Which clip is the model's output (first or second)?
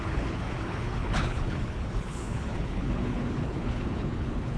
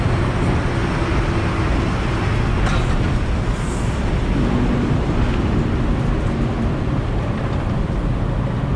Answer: first